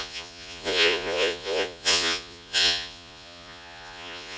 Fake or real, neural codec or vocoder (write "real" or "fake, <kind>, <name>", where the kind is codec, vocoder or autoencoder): fake, vocoder, Vocos